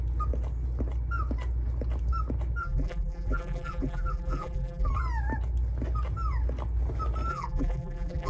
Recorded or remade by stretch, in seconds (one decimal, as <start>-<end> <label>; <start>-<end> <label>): 0.0-2.6 recorded; 2.6-4.9 remade; 4.9-7.3 recorded; 7.3-8.3 remade